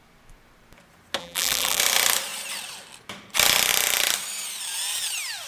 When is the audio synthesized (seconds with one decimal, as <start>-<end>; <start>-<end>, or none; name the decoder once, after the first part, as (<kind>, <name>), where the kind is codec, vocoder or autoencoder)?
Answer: 1.2-1.8 (vocoder, BigVGAN v2)